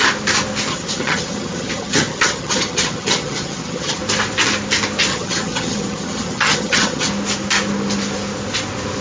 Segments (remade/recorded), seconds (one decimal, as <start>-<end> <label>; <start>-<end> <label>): 0.0-0.7 recorded; 0.7-4.0 remade; 4.0-5.1 recorded; 5.1-7.1 remade; 7.1-9.0 recorded